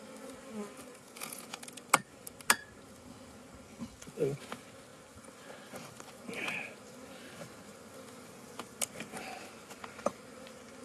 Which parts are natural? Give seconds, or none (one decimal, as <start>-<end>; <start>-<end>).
0.0-0.9; 1.6-10.8